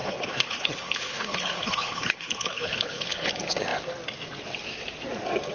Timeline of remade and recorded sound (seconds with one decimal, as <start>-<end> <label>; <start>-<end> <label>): 0.0-3.3 remade; 3.3-5.5 recorded